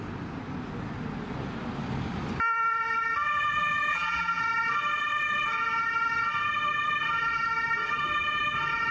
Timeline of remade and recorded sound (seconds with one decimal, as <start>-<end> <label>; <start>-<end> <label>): 0.0-3.9 recorded; 3.9-4.4 remade; 4.4-8.9 recorded